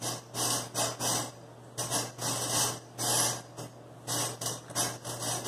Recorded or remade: recorded